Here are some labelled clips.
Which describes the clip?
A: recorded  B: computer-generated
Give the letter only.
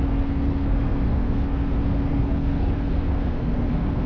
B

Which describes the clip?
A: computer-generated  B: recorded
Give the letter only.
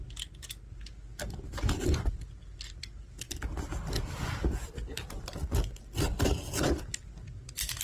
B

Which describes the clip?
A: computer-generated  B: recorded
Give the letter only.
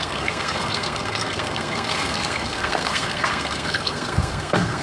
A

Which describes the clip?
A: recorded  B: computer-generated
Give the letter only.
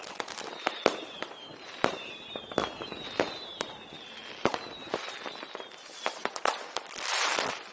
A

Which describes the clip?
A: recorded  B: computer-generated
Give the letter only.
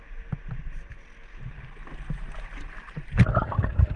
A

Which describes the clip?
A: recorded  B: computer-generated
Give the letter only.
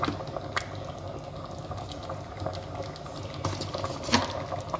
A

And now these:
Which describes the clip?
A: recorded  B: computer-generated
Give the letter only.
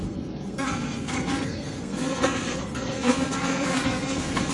B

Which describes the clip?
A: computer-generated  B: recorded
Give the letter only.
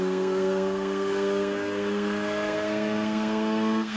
A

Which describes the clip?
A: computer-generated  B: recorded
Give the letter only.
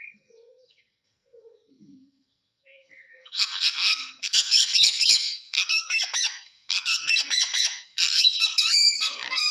A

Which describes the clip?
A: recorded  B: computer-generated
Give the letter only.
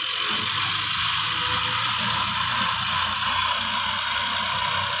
A